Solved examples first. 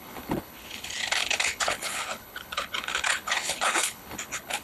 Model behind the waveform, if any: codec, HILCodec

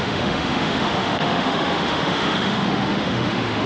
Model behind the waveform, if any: autoencoder, DAC-VAE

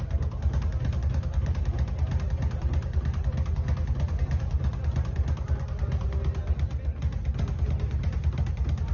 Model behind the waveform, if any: none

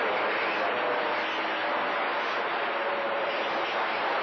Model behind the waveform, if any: none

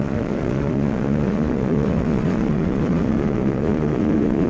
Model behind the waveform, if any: vocoder, Vocos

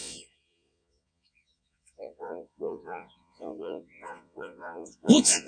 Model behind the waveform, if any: vocoder, Vocos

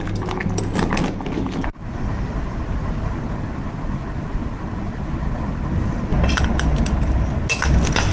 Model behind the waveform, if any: none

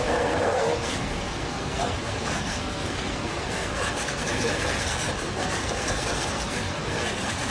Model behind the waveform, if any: codec, SNAC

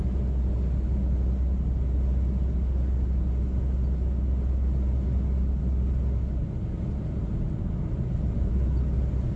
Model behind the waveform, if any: none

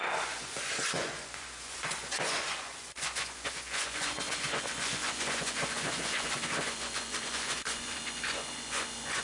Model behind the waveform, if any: vocoder, Vocos